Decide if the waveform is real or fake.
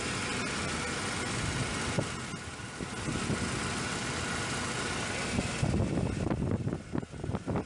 real